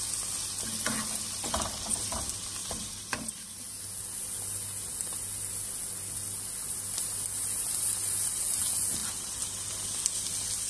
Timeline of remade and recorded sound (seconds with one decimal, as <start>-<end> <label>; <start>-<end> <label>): 0.0-2.6 recorded; 2.6-3.6 remade; 3.6-10.7 recorded